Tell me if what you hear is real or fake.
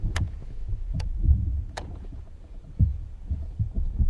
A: fake